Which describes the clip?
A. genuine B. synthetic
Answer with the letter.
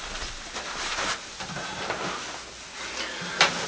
A